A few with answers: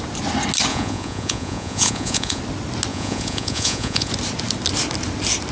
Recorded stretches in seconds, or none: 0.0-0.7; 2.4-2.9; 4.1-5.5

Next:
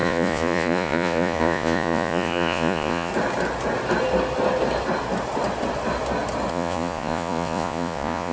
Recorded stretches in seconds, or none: 3.1-6.5

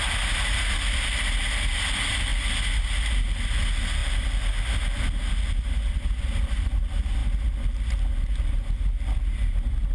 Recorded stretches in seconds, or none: 0.0-9.9

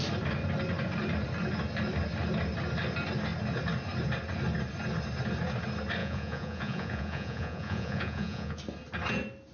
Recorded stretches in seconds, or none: 0.0-6.0; 8.6-9.5

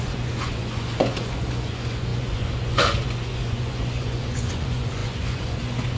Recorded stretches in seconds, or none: none